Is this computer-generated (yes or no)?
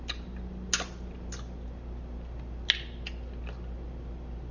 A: no